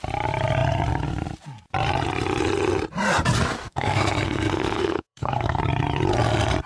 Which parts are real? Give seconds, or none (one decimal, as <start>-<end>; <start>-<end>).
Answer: 0.0-3.6; 5.6-6.7